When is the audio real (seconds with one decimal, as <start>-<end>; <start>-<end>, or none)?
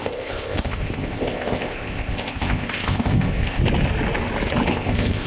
3.6-4.7